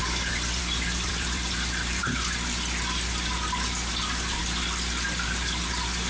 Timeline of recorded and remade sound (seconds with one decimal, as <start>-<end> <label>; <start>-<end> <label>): 0.0-2.0 remade; 2.0-4.4 recorded; 4.4-6.1 remade